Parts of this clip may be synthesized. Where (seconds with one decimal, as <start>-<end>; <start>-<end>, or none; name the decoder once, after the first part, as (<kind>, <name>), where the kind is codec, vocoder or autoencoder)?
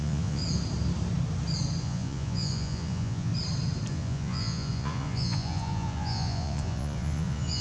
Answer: 0.0-0.4 (vocoder, Vocos); 1.8-3.3; 3.9-7.6